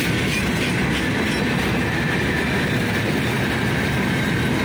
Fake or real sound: real